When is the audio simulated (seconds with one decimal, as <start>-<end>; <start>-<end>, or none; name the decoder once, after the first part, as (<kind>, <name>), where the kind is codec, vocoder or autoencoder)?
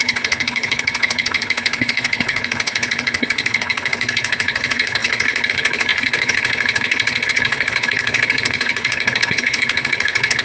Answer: 0.0-10.4 (codec, HILCodec)